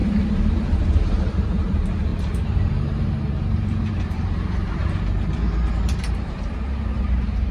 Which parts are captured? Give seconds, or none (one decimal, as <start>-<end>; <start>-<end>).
4.8-5.7